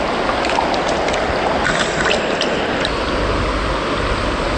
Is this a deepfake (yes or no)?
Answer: no